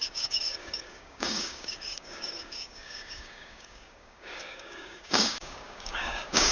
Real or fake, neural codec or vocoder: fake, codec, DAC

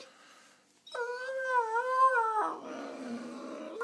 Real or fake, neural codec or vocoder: real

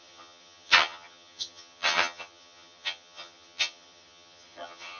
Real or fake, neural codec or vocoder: fake, vocoder, HiFi-GAN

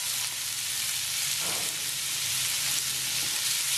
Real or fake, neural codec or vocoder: real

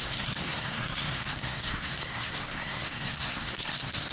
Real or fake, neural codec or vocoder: fake, codec, SNAC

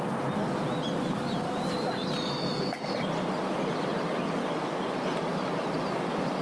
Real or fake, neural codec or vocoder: real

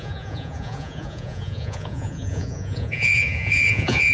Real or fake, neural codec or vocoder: fake, vocoder, Vocos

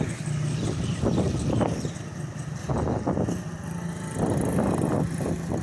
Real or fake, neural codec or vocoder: real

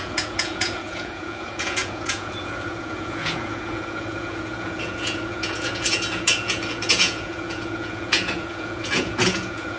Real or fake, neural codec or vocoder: fake, vocoder, Vocos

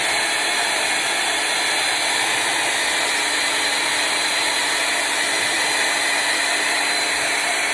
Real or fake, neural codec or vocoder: real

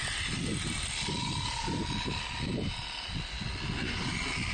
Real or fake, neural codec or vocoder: real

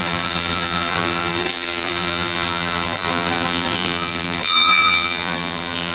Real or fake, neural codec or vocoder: fake, vocoder, BigVGAN v2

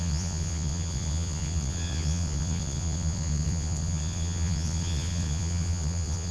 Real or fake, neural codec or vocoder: fake, vocoder, Vocos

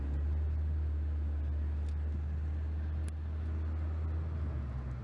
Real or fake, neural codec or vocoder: real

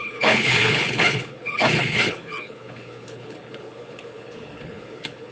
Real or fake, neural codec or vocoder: fake, codec, HILCodec